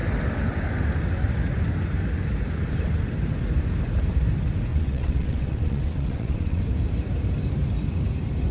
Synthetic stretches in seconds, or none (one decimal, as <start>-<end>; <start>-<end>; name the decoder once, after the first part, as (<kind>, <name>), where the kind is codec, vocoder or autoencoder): 4.7-6.6 (vocoder, WaveNeXt)